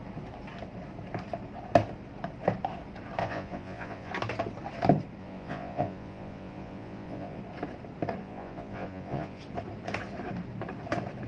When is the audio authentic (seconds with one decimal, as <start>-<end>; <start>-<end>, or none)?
0.0-3.2; 4.1-5.2; 7.4-8.2; 9.4-11.3